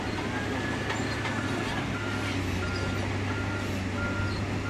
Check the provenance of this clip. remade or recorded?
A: recorded